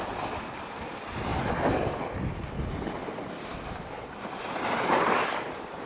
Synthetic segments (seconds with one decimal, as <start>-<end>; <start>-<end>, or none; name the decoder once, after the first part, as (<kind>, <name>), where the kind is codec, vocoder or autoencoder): none